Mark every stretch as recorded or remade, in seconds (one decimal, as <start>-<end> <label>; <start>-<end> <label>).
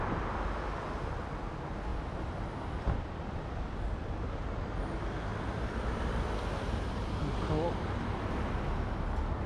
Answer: 0.0-1.9 recorded; 1.9-4.3 remade; 4.3-5.3 recorded; 5.3-7.1 remade; 7.1-9.5 recorded